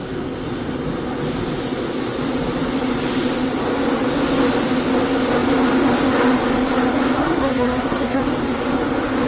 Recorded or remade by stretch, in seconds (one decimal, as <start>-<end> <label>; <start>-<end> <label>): 0.0-7.2 recorded; 7.2-8.2 remade; 8.2-9.3 recorded